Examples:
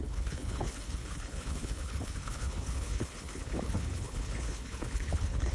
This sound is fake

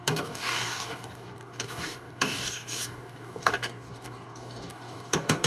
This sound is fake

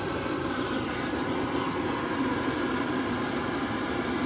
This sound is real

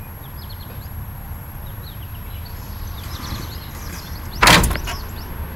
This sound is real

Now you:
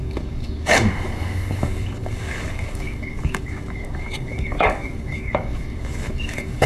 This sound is fake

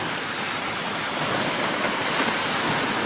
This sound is fake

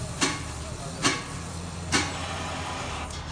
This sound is real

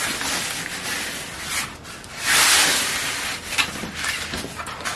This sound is real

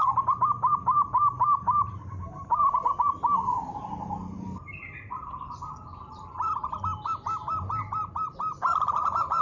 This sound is fake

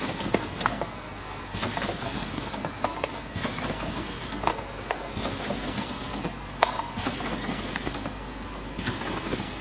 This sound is fake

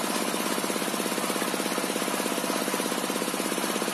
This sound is real